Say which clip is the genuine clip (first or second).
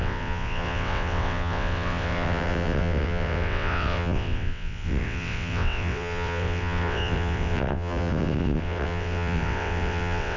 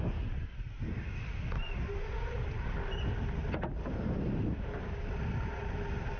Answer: second